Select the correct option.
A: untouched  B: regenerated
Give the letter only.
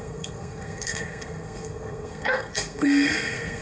B